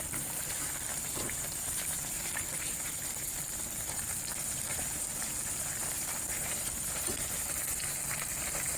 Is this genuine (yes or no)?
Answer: no